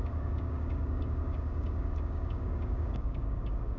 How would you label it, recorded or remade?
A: remade